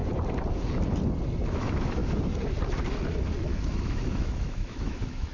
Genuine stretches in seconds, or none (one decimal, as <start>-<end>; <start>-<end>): 0.0-1.5; 2.0-3.6

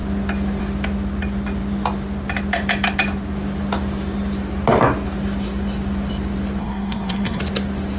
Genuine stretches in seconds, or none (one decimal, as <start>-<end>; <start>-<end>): 0.0-6.6; 7.4-8.0